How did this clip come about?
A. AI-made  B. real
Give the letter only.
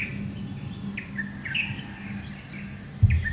B